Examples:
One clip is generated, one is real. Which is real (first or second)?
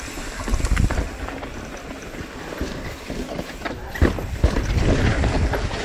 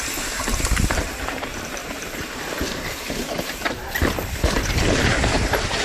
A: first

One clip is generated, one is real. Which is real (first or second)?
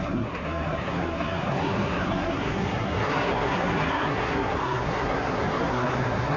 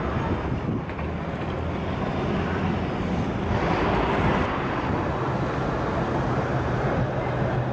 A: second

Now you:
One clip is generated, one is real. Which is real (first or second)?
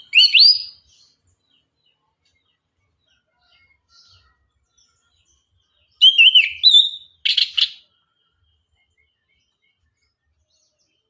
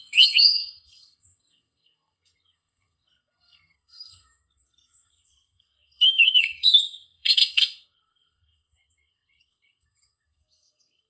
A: first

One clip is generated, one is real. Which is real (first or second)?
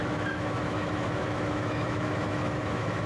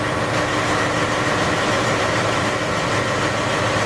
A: second